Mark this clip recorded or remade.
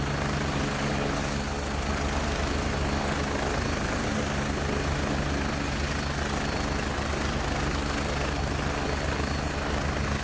recorded